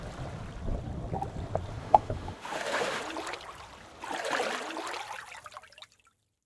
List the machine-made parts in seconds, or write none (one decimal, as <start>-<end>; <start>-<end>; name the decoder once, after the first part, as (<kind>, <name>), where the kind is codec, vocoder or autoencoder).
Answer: 1.8-3.0 (autoencoder, DAC-VAE)